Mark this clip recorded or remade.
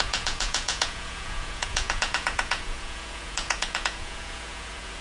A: remade